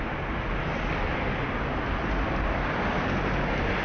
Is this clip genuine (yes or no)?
yes